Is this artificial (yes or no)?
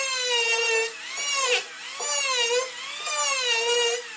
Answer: no